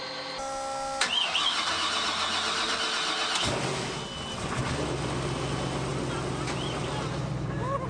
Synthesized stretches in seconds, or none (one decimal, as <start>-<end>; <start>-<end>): none